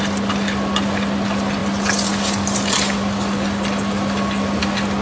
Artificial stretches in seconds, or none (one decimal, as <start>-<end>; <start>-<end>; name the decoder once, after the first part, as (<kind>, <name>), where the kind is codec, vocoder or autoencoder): none